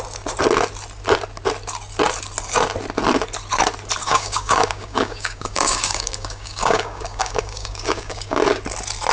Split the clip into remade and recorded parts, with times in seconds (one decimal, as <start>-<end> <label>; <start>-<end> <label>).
0.0-4.0 recorded; 4.0-8.4 remade; 8.4-9.1 recorded